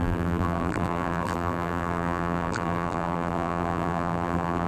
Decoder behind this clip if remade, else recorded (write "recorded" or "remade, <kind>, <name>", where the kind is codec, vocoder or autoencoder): remade, vocoder, BigVGAN v2